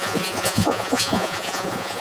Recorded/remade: remade